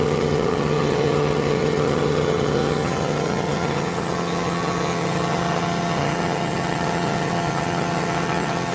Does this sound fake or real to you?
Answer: fake